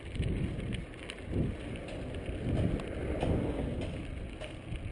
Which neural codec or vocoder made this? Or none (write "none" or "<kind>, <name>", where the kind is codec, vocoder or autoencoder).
none